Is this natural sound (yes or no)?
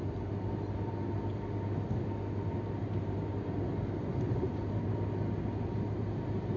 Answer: yes